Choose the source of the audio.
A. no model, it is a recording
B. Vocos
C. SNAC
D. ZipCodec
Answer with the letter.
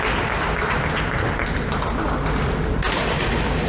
A